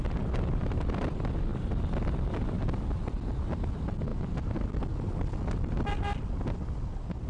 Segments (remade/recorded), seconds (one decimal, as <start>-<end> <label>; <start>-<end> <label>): 0.0-7.3 recorded